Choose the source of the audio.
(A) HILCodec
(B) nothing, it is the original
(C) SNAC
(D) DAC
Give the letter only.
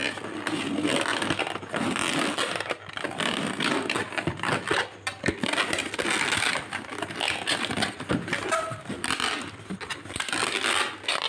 B